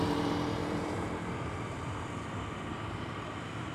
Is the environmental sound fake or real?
fake